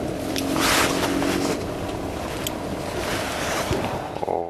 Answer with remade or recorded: recorded